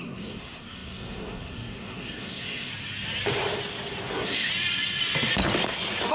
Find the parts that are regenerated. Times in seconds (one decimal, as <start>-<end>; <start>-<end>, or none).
0.0-2.7; 4.1-4.5